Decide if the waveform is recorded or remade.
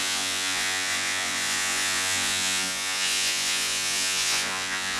remade